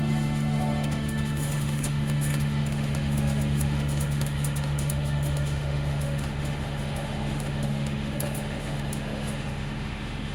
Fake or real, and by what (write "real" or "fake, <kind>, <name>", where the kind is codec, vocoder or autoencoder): fake, autoencoder, DAC-VAE